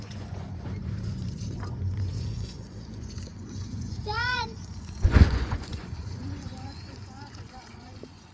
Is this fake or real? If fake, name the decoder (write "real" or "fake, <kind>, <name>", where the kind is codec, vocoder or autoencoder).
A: fake, vocoder, Vocos